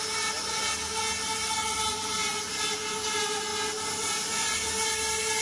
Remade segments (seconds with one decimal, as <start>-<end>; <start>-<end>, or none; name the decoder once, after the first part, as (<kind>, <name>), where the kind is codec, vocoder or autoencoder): none